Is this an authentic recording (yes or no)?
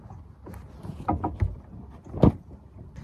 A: yes